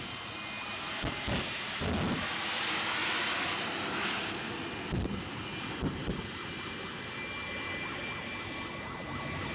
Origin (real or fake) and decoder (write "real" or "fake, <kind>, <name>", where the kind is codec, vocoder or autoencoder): real